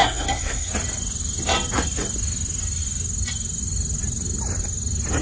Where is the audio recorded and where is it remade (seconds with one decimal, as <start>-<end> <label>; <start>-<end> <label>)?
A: 0.0-0.7 remade; 0.7-5.2 recorded